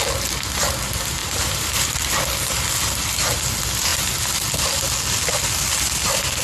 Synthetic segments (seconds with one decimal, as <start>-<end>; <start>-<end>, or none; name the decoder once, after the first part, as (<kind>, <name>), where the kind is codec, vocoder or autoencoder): 1.2-2.1 (vocoder, BigVGAN v2)